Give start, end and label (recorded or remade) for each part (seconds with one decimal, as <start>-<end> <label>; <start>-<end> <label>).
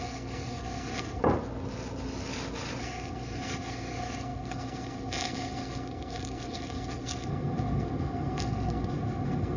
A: 0.0-1.2 remade; 1.2-2.8 recorded; 2.8-9.6 remade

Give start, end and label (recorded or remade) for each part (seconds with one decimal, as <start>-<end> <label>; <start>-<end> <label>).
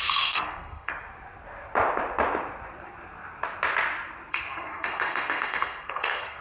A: 0.0-0.9 remade; 0.9-4.3 recorded; 4.3-6.4 remade